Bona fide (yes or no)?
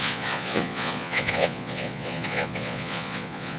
no